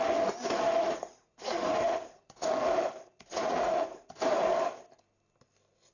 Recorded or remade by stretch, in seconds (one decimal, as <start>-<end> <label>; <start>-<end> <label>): 0.0-0.8 recorded; 0.8-2.5 remade; 2.5-3.3 recorded; 3.3-4.2 remade; 4.2-5.9 recorded